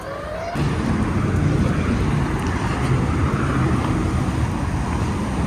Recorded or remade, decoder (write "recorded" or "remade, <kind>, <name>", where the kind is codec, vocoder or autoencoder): recorded